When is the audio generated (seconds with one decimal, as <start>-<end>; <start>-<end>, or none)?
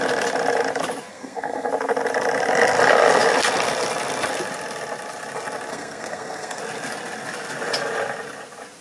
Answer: 1.1-1.7; 5.7-6.6